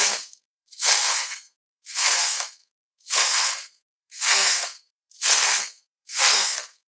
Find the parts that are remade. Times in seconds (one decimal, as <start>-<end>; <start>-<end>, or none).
0.0-6.9